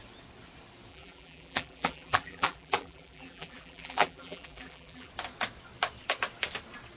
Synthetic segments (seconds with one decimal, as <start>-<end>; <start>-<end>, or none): 0.9-5.1

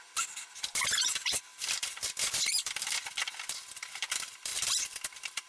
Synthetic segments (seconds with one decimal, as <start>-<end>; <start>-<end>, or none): 0.0-5.5

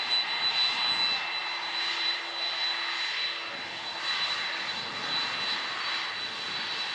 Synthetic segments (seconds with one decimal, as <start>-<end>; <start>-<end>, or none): 1.4-2.2

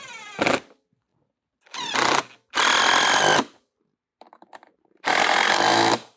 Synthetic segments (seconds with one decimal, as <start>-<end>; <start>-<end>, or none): 4.1-6.2